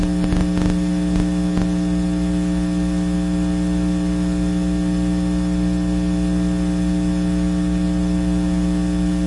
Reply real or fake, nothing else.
real